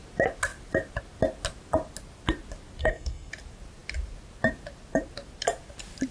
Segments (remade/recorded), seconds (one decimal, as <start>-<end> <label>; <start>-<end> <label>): 0.0-2.8 recorded; 2.8-3.3 remade; 3.3-6.1 recorded